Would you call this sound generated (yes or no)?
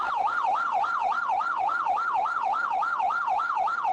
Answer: yes